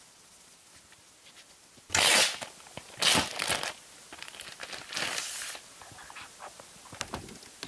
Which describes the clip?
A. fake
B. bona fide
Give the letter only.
B